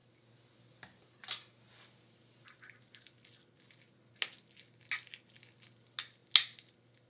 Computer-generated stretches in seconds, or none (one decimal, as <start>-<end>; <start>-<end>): none